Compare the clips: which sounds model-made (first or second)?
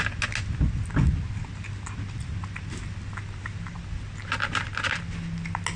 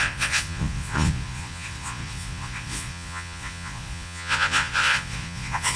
second